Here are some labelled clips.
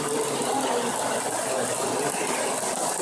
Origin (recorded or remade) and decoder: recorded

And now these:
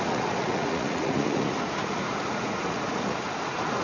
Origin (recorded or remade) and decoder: remade, vocoder, Vocos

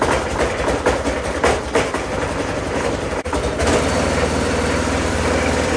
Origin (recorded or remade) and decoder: remade, vocoder, BigVGAN v2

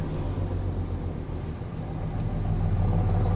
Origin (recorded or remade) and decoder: recorded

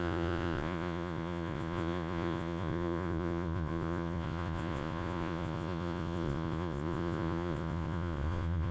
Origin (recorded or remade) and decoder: remade, vocoder, Vocos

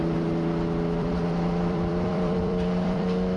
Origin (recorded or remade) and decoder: remade, vocoder, BigVGAN v2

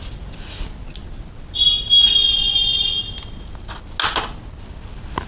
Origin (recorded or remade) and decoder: recorded